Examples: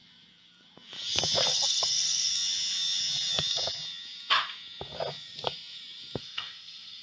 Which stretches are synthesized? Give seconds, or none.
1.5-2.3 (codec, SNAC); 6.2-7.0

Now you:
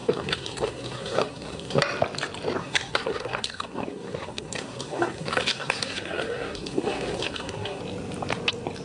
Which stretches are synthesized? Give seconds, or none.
0.0-1.8 (codec, SNAC); 2.6-7.8

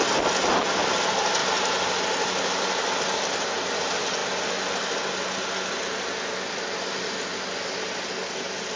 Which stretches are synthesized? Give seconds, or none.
none

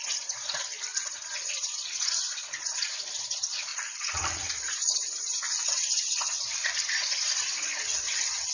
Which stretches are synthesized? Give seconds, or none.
0.0-8.5 (vocoder, Vocos)

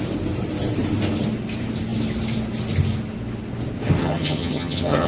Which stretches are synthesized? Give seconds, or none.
4.0-5.1 (vocoder, HiFi-GAN)